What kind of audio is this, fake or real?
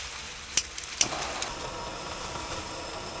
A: real